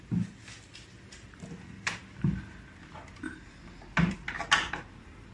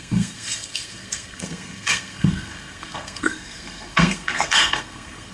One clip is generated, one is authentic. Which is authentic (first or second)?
first